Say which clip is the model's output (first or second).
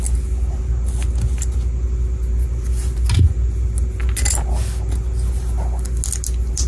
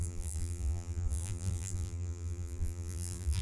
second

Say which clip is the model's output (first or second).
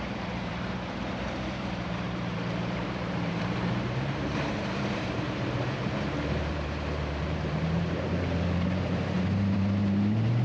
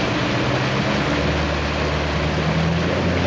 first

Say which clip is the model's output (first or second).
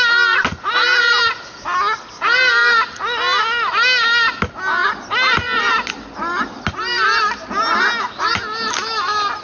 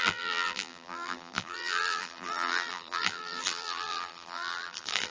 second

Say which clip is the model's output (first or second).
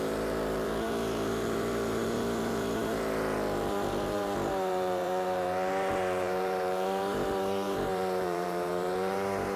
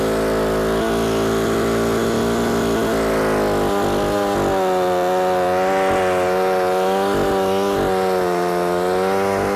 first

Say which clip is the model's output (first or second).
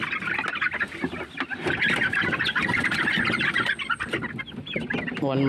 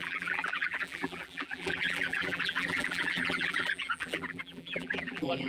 second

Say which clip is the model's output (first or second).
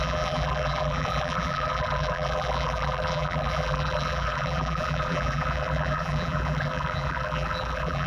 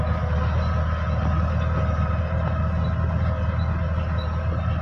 first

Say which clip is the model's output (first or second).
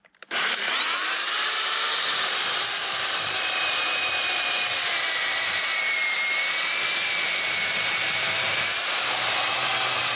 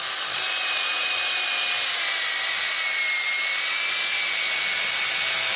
first